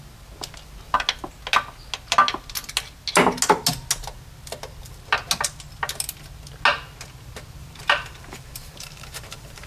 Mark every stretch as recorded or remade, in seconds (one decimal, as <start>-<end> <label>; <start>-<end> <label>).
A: 0.0-7.6 recorded; 7.6-9.7 remade